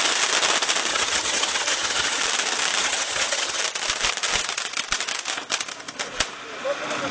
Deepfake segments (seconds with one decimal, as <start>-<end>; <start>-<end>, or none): 0.9-2.2; 2.8-3.6